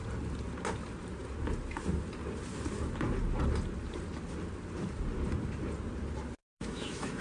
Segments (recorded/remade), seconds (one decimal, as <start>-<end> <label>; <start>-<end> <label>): 0.0-6.4 recorded; 6.4-7.2 remade